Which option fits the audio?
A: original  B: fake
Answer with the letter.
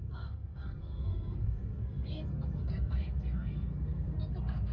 B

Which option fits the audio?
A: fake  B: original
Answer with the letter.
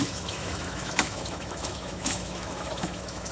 A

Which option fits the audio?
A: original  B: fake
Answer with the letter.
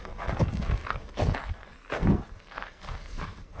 B